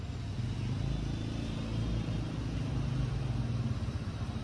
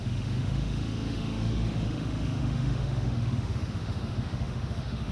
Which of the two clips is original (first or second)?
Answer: first